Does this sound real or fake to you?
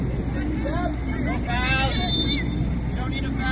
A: real